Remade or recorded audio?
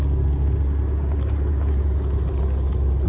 recorded